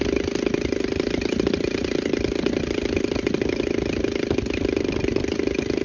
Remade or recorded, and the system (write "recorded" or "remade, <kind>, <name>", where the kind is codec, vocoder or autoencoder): recorded